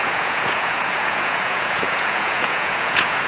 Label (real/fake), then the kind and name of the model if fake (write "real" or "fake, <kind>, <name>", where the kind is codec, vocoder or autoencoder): fake, vocoder, Vocos